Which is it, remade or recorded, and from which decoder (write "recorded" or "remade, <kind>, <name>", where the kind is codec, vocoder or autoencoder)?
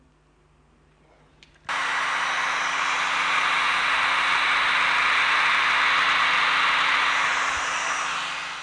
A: recorded